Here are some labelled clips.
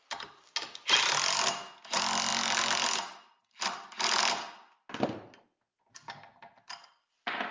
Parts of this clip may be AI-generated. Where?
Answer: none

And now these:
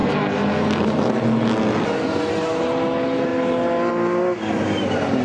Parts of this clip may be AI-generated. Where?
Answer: none